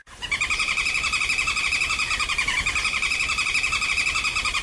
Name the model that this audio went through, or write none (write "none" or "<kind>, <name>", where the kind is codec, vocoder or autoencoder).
vocoder, BigVGAN v2